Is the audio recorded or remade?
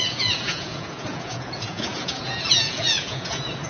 remade